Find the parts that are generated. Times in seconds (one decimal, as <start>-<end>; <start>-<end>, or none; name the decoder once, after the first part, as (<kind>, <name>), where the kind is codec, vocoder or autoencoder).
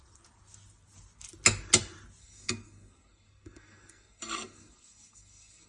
2.2-5.7 (codec, SNAC)